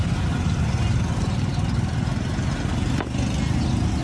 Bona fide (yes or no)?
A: yes